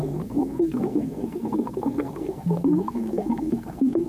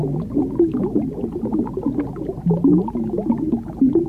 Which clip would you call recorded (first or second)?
second